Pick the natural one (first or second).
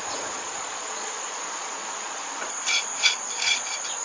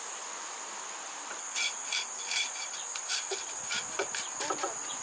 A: second